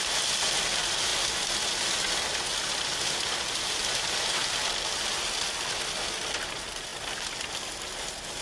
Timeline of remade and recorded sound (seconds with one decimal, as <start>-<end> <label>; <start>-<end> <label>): 0.0-8.4 recorded